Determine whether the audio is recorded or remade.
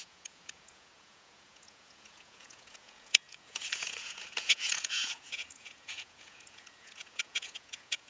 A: remade